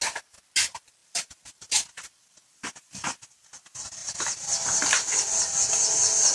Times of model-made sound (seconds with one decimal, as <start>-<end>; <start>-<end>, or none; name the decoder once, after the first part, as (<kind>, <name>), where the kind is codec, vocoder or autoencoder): 1.0-3.0 (vocoder, BigVGAN v2)